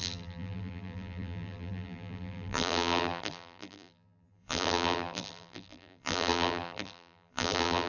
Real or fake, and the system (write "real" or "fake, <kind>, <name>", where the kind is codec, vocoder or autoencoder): fake, vocoder, BigVGAN v2